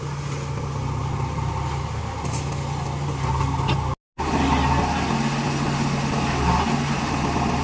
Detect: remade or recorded recorded